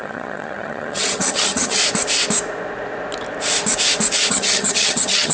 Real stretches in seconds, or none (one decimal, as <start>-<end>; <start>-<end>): 1.8-4.3